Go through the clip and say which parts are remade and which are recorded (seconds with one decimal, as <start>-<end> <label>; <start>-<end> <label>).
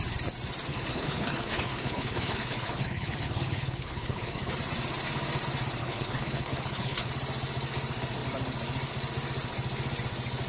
0.0-0.7 recorded; 0.7-4.5 remade; 4.5-5.8 recorded; 5.8-7.1 remade; 7.1-10.5 recorded